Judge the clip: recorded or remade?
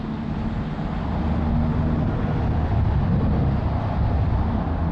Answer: recorded